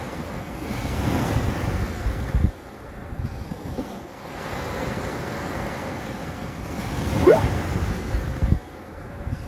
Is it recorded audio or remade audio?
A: remade